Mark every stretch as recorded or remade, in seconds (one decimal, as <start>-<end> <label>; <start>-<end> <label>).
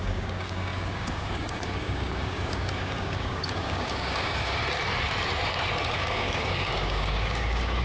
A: 0.0-4.6 remade; 4.6-5.9 recorded; 5.9-7.8 remade